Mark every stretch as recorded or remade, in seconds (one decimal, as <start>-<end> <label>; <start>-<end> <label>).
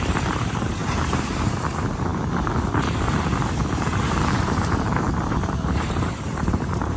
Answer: 0.0-7.0 remade